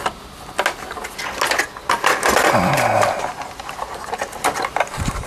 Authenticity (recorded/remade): recorded